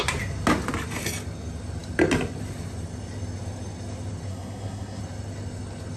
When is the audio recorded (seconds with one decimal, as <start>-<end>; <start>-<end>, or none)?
0.0-4.3; 5.0-6.0